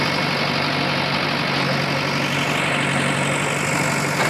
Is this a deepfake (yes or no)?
no